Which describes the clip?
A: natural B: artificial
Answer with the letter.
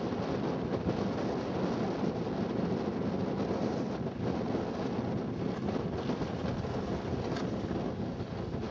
A